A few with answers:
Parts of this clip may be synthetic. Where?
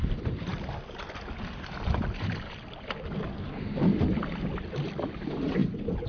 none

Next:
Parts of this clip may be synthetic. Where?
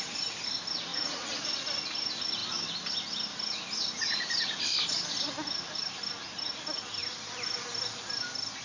0.9-1.5 (vocoder, Vocos)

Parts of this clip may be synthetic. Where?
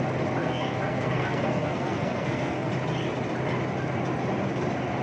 0.4-2.7 (codec, SNAC)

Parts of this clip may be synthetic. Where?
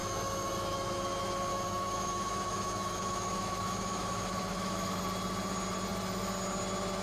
0.0-1.0 (autoencoder, DAC-VAE); 1.5-5.0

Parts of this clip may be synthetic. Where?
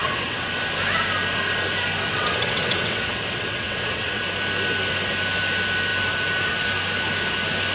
0.0-0.5 (vocoder, WaveNeXt); 2.0-4.2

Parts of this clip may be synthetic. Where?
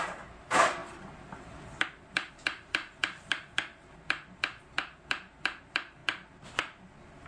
0.0-6.0 (vocoder, BigVGAN v2)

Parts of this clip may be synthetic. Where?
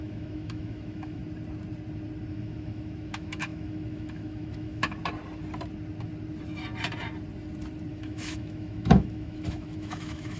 0.0-1.2 (autoencoder, DAC-VAE); 2.3-5.0; 7.9-10.4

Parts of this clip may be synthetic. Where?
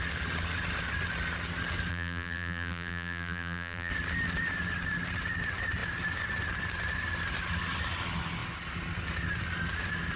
1.9-3.9 (vocoder, BigVGAN v2)